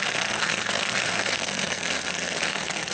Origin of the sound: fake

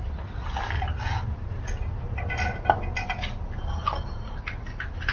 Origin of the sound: real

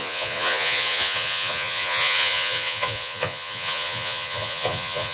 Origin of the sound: fake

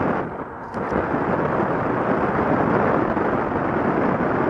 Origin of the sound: real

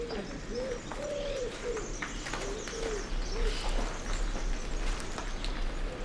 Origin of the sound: real